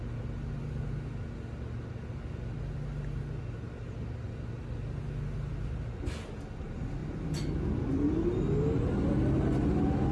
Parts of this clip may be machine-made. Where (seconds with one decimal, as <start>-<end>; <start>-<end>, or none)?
none